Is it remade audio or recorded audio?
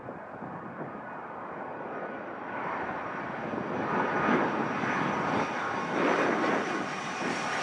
recorded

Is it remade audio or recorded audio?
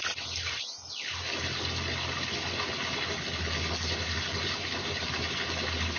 recorded